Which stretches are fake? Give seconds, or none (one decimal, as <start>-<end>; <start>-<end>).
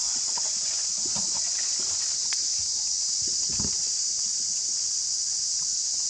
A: 0.0-1.6; 2.2-4.1